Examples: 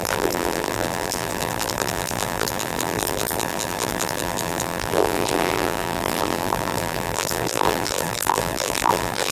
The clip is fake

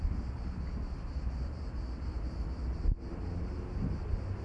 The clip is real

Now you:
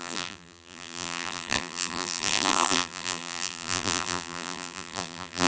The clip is fake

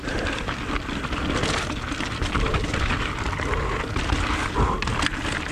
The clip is real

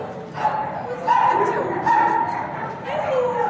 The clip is fake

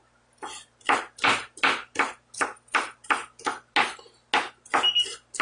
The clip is real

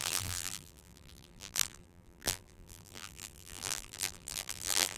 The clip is fake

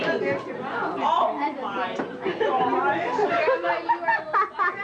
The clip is real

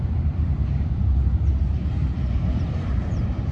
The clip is fake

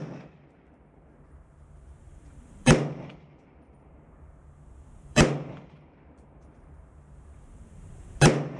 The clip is fake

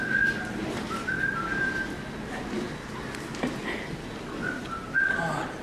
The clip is real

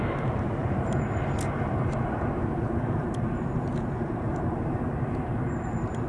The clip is fake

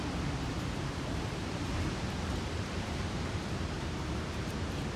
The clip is fake